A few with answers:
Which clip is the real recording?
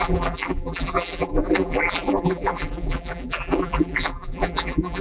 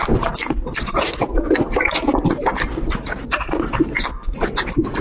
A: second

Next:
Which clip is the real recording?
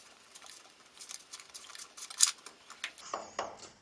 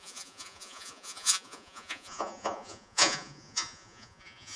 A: first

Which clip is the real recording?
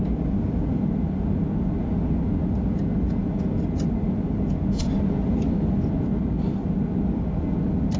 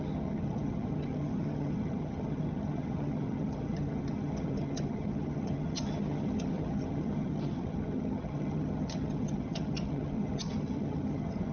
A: first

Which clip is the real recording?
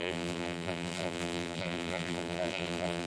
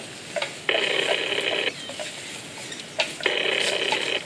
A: second